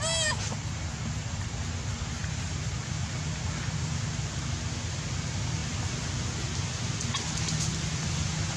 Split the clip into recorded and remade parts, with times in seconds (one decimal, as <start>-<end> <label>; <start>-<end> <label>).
0.0-8.6 recorded